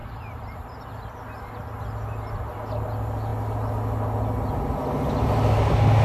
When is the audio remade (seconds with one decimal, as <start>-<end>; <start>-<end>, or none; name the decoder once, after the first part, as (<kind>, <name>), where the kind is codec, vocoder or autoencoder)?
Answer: 0.0-1.1 (vocoder, BigVGAN v2)